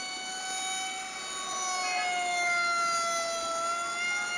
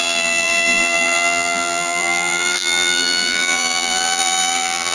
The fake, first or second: second